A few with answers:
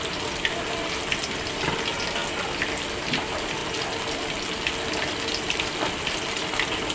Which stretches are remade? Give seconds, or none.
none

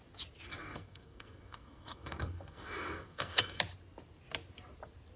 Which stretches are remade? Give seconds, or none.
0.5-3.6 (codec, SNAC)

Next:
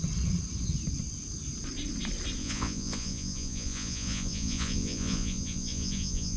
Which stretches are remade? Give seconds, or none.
2.4-6.4 (vocoder, Vocos)

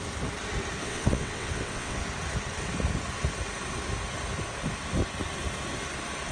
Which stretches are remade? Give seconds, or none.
0.8-2.0 (vocoder, WaveNeXt)

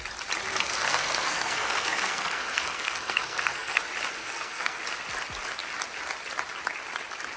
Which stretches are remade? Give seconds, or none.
0.5-3.8 (codec, SNAC); 4.2-4.8

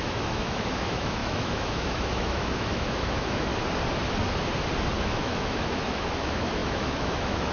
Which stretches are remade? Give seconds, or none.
0.0-3.5 (autoencoder, DAC-VAE); 5.0-7.5

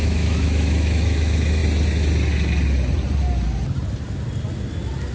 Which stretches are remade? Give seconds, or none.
0.0-1.6 (autoencoder, DAC-VAE)

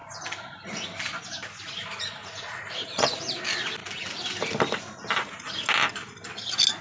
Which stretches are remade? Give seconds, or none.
2.2-3.4 (vocoder, Vocos)